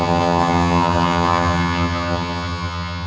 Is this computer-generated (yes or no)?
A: yes